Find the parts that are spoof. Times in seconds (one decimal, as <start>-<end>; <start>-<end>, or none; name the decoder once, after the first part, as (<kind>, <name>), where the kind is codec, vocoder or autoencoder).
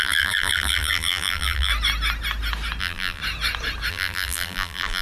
0.0-1.7 (vocoder, BigVGAN v2); 2.8-3.2; 3.9-5.0